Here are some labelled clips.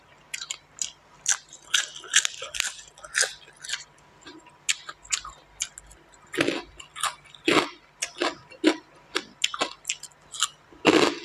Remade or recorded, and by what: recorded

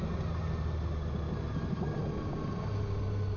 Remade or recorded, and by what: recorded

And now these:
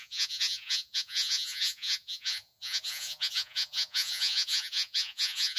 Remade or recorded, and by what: remade, vocoder, Vocos